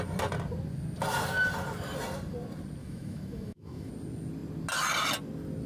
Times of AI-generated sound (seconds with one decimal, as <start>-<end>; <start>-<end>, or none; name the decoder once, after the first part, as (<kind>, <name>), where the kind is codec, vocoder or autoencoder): 2.8-3.9 (autoencoder, DAC-VAE)